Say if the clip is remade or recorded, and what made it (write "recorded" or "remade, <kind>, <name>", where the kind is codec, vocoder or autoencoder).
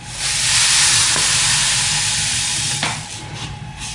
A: recorded